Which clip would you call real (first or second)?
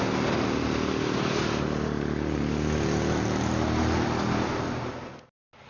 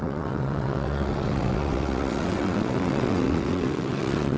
first